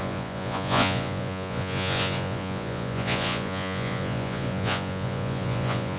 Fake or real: fake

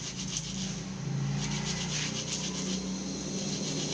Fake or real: real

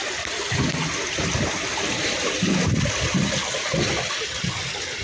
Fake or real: fake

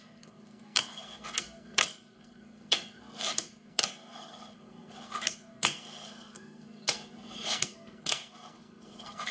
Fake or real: fake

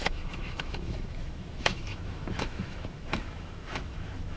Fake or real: fake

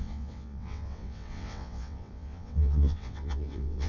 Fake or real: fake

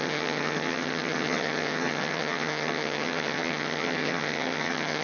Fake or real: fake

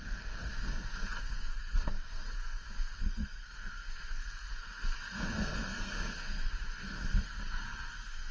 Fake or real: fake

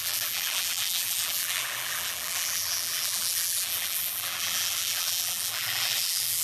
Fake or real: fake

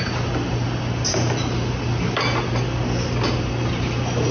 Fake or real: real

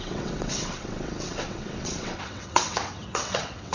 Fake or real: fake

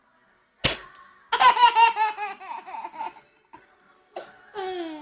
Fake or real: real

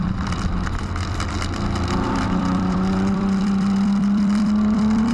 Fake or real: fake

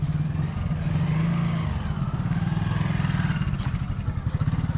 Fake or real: real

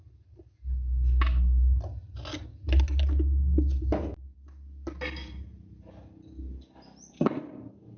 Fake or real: real